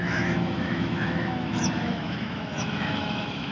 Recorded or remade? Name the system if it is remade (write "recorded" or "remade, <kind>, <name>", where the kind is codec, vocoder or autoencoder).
remade, autoencoder, DAC-VAE